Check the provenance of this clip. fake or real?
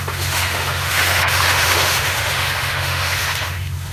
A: fake